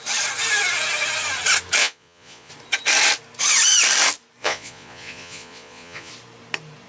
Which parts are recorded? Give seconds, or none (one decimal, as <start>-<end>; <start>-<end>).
0.0-1.8; 2.5-4.4; 6.1-6.9